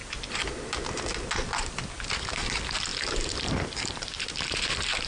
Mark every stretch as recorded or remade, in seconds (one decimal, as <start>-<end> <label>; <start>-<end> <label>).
0.0-2.9 recorded; 2.9-5.1 remade